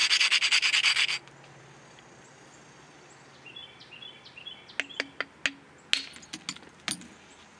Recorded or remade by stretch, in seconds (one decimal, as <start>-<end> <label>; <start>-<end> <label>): 0.0-3.6 recorded; 3.6-4.5 remade; 4.5-7.6 recorded